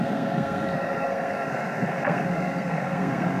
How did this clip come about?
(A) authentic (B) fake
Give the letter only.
B